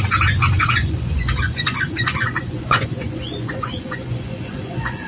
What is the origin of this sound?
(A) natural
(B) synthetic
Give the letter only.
B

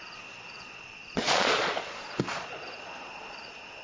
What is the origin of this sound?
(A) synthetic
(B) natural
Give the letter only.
A